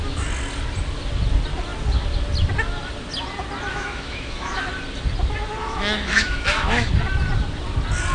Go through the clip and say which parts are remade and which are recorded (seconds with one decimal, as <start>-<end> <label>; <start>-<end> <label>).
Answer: 0.0-3.7 recorded; 3.7-4.5 remade; 4.5-5.6 recorded; 5.6-6.9 remade; 6.9-8.1 recorded